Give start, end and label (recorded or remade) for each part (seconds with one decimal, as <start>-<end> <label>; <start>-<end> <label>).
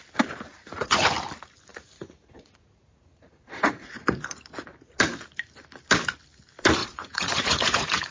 0.0-0.5 recorded; 0.5-1.1 remade; 1.1-1.7 recorded; 1.7-4.1 remade; 4.1-6.8 recorded; 6.8-8.1 remade